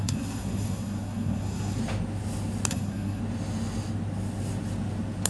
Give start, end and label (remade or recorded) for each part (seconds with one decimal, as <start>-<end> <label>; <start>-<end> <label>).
0.0-1.8 remade; 1.8-2.7 recorded; 2.7-3.2 remade; 3.2-5.3 recorded